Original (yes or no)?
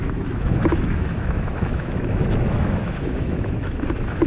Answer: no